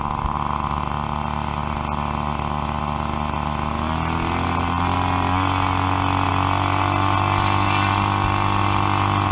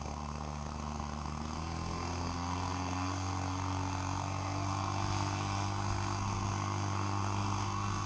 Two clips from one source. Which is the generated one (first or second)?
second